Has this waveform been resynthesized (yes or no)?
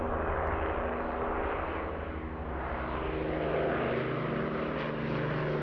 no